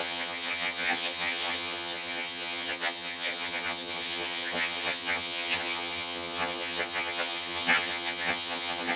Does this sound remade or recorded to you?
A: remade